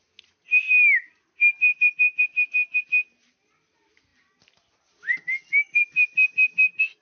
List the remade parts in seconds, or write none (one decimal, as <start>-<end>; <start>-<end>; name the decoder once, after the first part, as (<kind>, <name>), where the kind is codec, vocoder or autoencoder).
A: 1.7-2.2 (vocoder, BigVGAN v2)